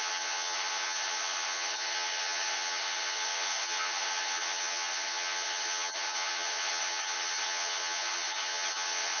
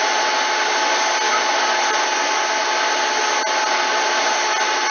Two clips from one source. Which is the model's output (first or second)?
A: first